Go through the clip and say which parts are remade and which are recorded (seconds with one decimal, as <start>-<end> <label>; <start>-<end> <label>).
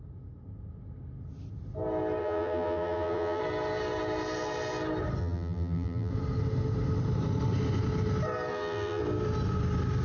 0.0-2.2 recorded; 2.2-3.4 remade; 3.4-5.2 recorded; 5.2-6.1 remade; 6.1-8.5 recorded; 8.5-9.0 remade; 9.0-10.0 recorded